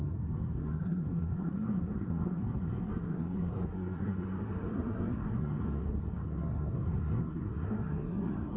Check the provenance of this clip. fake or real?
fake